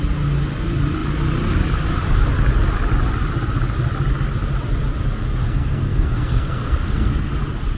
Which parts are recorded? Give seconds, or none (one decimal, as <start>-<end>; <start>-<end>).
0.0-5.4; 7.3-7.8